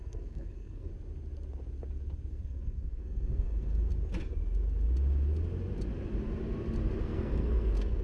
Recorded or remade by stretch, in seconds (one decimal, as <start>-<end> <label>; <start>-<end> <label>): 0.0-0.9 remade; 0.9-2.3 recorded; 2.3-3.9 remade; 3.9-7.0 recorded; 7.0-8.0 remade